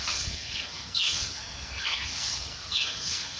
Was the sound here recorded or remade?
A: remade